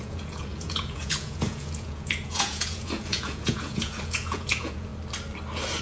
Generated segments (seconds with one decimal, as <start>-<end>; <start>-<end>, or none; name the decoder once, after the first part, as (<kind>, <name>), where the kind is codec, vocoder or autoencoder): 0.0-4.9 (vocoder, Vocos)

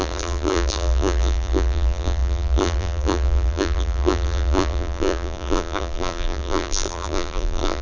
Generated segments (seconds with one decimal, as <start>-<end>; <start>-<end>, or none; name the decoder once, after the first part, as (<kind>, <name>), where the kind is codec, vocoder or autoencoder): 0.0-7.8 (vocoder, BigVGAN v2)

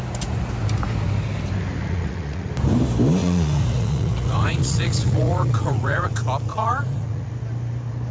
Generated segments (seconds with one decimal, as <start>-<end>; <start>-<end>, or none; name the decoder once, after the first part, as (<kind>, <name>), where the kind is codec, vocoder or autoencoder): 1.8-2.5 (vocoder, Vocos); 3.2-6.1; 6.5-7.3

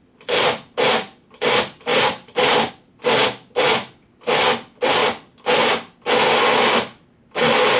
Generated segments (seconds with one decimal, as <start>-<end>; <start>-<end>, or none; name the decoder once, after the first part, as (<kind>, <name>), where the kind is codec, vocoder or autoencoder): 1.9-2.7 (vocoder, BigVGAN v2)

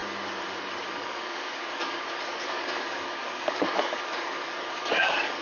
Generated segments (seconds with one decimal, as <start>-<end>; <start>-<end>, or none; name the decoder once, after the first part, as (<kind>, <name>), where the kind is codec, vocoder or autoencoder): 0.9-5.4 (codec, DAC)

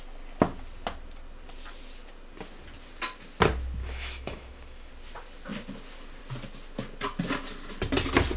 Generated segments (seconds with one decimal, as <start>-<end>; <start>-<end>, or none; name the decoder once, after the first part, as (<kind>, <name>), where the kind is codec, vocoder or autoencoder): 3.8-4.9 (autoencoder, DAC-VAE)